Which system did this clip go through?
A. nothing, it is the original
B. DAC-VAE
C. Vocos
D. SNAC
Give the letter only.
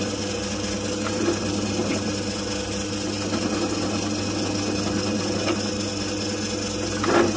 A